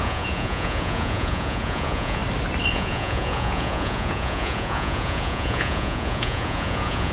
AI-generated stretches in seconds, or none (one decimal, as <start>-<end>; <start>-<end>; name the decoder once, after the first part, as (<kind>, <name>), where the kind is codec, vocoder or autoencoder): 0.0-2.2 (vocoder, Vocos); 2.7-7.1